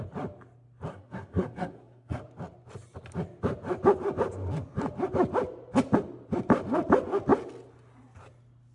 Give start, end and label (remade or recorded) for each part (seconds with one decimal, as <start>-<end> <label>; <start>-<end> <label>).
0.0-0.9 recorded; 0.9-2.2 remade; 2.2-8.7 recorded